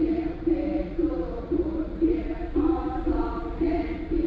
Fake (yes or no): yes